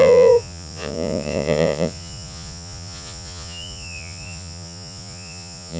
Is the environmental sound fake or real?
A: fake